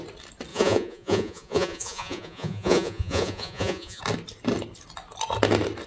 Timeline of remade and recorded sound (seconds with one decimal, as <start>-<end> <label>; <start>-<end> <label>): 0.0-0.5 recorded; 0.5-4.0 remade; 4.0-5.9 recorded